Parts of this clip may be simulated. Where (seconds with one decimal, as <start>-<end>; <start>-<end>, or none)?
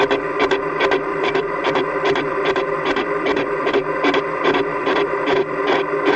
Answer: 1.1-3.7; 4.7-5.7